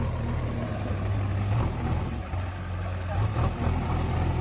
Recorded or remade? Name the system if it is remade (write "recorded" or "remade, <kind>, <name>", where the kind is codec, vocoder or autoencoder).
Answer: recorded